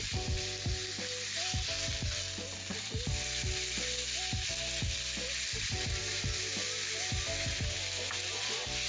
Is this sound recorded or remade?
recorded